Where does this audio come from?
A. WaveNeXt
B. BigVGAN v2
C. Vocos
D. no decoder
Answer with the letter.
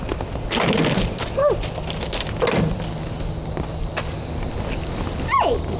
D